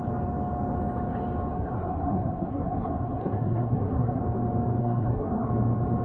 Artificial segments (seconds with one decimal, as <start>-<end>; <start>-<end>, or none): 1.5-4.2; 4.8-5.5